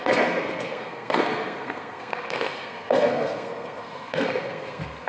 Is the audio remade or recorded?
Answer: remade